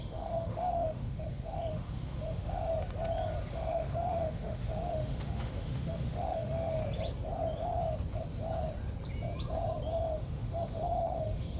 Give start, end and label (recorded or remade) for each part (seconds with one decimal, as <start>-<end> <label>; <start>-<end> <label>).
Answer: 0.0-2.7 remade; 2.7-3.5 recorded; 3.5-6.8 remade; 6.8-9.9 recorded; 9.9-11.6 remade